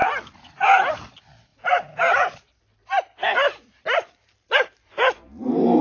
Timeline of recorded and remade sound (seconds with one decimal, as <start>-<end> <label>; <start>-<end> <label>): 0.0-0.5 remade; 0.5-1.5 recorded; 1.5-2.0 remade; 2.0-3.1 recorded; 3.1-4.9 remade; 4.9-5.8 recorded